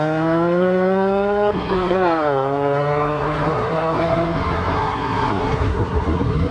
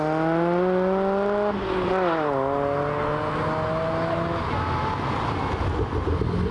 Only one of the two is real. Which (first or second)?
second